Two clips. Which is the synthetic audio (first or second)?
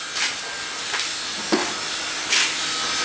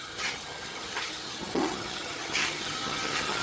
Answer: second